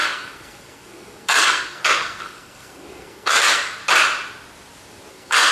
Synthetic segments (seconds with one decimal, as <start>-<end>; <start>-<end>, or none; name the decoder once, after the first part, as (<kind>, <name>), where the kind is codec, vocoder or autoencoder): 0.0-3.8 (codec, SNAC); 5.1-5.5